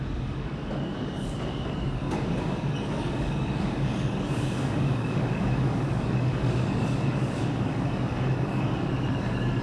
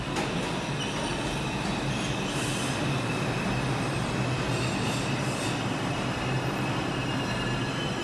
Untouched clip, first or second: second